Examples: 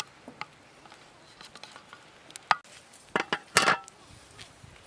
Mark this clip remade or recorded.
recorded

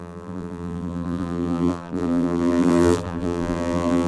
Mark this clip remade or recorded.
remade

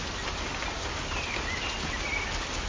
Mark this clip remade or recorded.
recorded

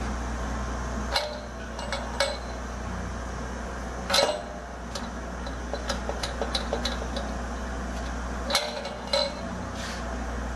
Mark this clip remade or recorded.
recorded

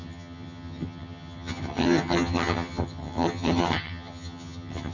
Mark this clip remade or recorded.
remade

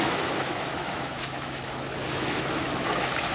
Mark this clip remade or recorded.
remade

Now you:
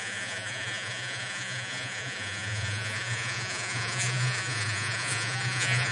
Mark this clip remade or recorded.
remade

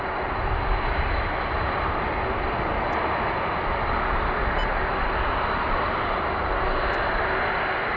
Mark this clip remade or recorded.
recorded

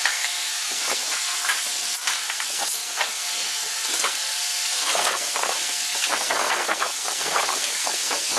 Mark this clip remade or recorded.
remade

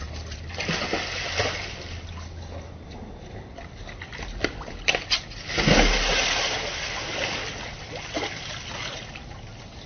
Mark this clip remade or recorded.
recorded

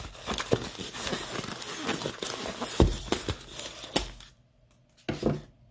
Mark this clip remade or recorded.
recorded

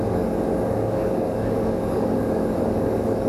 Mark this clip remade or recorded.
remade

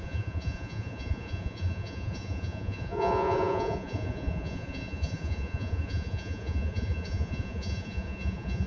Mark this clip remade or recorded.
remade